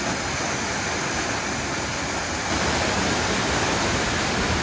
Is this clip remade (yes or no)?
no